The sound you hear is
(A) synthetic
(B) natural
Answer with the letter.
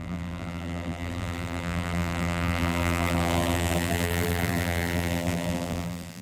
A